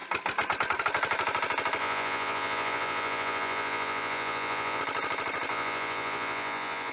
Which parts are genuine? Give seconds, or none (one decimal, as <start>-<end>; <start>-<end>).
0.0-1.8; 4.8-5.5